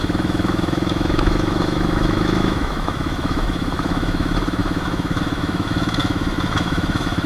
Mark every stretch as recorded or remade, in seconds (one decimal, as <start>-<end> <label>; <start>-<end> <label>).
0.0-7.3 remade

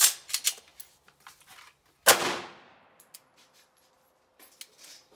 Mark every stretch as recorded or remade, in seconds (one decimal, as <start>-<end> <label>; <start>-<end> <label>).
0.0-5.2 recorded

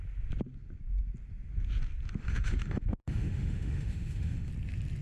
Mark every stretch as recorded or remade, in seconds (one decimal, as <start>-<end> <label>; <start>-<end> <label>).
0.0-2.2 recorded; 2.2-4.5 remade; 4.5-5.0 recorded

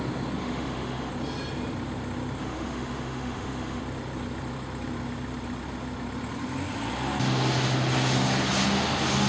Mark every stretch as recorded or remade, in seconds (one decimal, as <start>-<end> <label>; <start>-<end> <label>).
0.0-0.4 recorded; 0.4-1.1 remade; 1.1-2.4 recorded; 2.4-3.8 remade; 3.8-9.3 recorded